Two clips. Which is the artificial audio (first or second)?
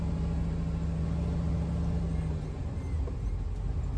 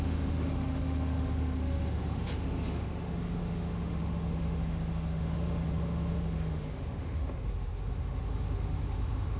second